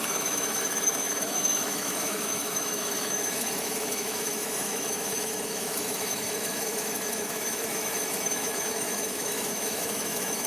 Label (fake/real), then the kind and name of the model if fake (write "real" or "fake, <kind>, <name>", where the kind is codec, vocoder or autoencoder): fake, autoencoder, DAC-VAE